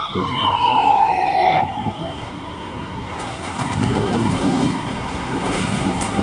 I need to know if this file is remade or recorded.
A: remade